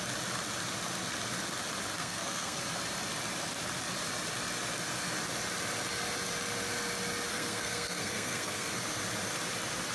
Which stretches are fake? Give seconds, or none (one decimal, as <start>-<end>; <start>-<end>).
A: 2.0-2.6; 7.3-8.7